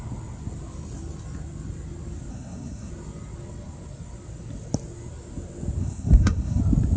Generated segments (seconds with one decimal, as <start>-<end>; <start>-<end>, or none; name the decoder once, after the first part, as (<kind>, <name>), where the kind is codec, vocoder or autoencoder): 2.3-2.9 (codec, SNAC); 5.8-6.6